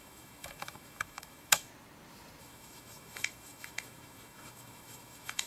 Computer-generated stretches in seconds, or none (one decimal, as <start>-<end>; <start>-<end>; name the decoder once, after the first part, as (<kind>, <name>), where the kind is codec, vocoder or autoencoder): 0.0-1.7 (autoencoder, DAC-VAE); 2.4-5.5